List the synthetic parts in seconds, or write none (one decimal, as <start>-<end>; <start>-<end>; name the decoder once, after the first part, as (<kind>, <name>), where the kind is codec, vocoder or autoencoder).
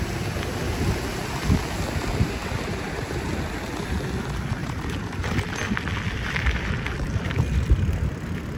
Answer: 2.4-3.3 (vocoder, BigVGAN v2); 4.6-5.5